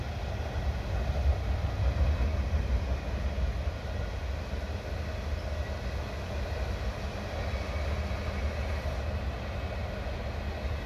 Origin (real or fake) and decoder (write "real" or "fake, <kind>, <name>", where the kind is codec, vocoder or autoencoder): real